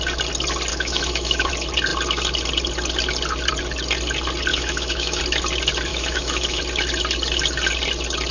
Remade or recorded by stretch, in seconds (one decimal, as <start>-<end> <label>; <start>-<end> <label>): 0.0-0.7 recorded; 0.7-1.5 remade; 1.5-4.5 recorded; 4.5-5.2 remade; 5.2-5.9 recorded; 5.9-6.6 remade; 6.6-8.3 recorded